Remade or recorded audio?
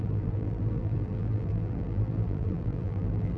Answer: remade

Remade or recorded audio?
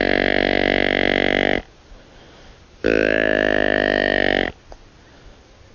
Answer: recorded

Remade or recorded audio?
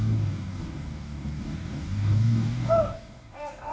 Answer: remade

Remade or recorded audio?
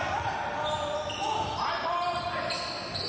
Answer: recorded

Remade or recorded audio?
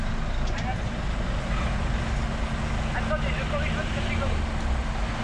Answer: recorded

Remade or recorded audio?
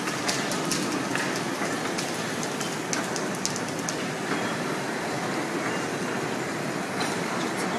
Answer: recorded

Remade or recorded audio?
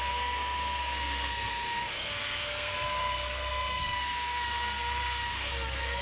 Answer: remade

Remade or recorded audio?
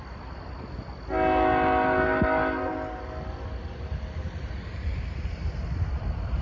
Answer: recorded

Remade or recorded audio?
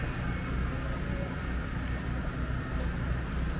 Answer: recorded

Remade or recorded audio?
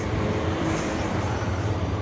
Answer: remade